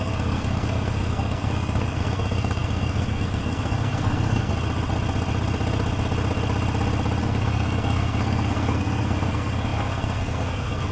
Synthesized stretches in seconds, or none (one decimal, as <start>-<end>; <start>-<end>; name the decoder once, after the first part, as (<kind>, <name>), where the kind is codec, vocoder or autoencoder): 0.0-4.5 (codec, SNAC); 7.2-10.9